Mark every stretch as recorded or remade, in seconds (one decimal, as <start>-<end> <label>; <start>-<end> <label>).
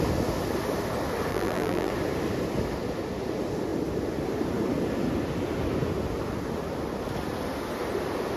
0.0-1.3 recorded; 1.3-1.9 remade; 1.9-8.4 recorded